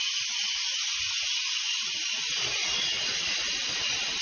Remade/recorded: recorded